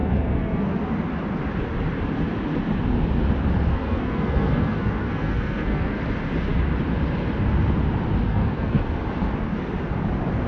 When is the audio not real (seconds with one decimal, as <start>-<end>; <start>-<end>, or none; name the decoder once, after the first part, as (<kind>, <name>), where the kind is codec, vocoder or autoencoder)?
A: 0.0-0.8 (codec, SNAC); 3.7-6.0; 8.3-8.8